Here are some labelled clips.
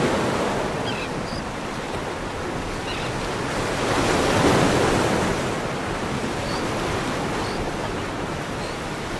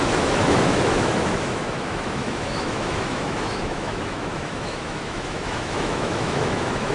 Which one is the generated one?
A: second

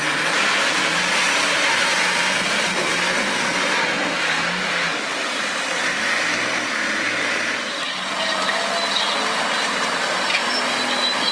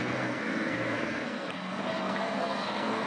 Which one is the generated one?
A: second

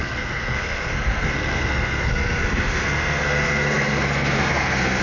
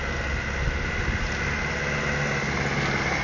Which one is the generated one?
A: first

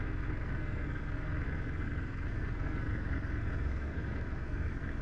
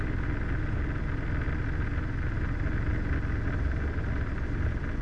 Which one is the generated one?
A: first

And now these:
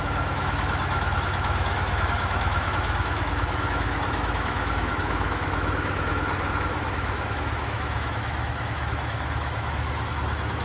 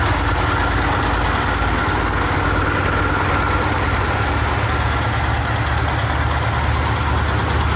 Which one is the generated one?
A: first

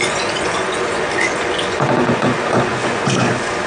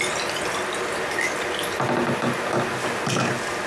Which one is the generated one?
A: first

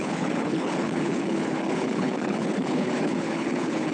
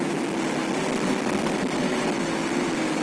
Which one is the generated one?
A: first